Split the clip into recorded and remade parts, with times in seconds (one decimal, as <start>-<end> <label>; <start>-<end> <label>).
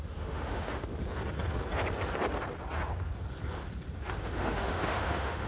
0.0-0.9 remade; 0.9-4.2 recorded; 4.2-5.5 remade